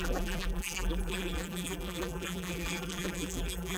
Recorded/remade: remade